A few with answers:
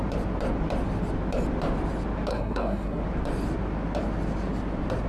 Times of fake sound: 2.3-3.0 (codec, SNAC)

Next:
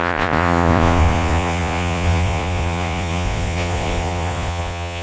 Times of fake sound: 0.0-5.0 (vocoder, Vocos)

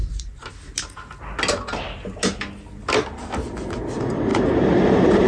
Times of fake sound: 0.0-0.5 (vocoder, BigVGAN v2); 4.3-5.3

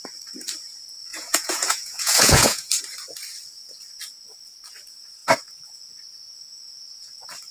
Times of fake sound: 1.1-2.7 (vocoder, Vocos)